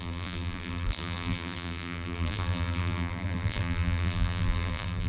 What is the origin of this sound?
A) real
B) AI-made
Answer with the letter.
B